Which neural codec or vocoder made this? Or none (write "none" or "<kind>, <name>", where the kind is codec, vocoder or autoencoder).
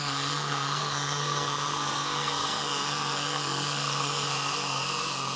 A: codec, SNAC